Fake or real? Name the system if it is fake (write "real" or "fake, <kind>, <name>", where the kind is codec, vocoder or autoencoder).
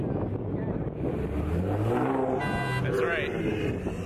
real